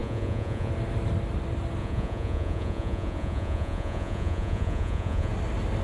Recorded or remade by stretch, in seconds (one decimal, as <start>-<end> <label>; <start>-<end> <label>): 0.0-0.7 remade; 0.7-1.8 recorded; 1.8-5.3 remade; 5.3-5.8 recorded